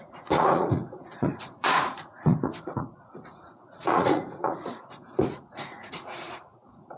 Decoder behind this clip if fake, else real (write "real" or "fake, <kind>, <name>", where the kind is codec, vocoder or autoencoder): fake, vocoder, Vocos